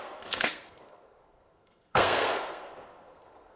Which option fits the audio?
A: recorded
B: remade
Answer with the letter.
B